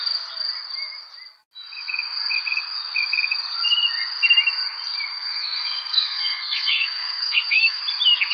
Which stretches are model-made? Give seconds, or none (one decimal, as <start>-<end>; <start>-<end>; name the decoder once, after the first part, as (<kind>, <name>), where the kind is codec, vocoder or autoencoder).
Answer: 5.1-7.8 (codec, SNAC)